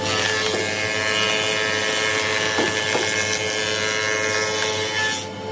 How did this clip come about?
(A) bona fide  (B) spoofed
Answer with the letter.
A